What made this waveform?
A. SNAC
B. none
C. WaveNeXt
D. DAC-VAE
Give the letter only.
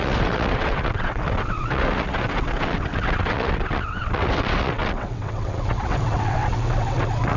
C